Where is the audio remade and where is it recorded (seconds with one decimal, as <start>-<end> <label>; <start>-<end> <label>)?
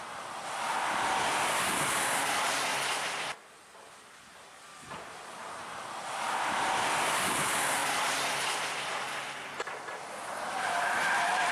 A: 0.0-11.5 recorded